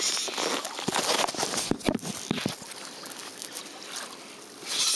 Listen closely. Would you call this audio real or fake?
real